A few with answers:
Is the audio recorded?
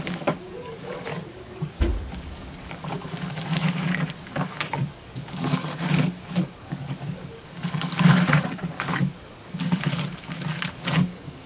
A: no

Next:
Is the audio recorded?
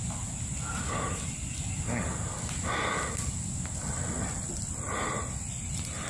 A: yes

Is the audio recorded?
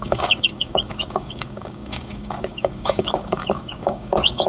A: no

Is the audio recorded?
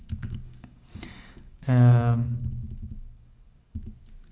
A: no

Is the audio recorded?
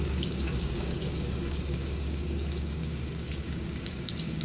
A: no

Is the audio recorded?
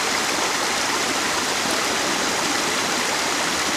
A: yes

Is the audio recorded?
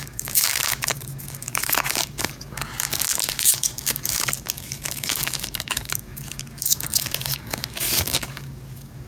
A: no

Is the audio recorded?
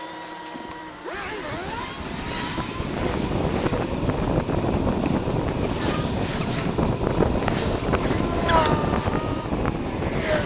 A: yes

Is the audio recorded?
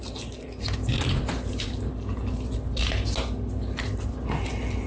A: yes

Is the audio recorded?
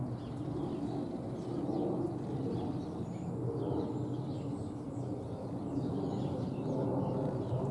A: yes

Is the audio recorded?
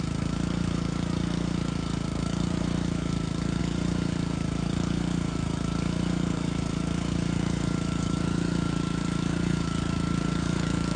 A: no